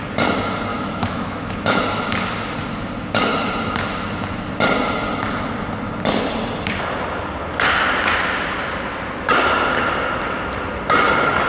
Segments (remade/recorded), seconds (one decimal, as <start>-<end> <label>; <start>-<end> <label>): 0.0-0.7 recorded; 0.7-1.8 remade; 1.8-11.5 recorded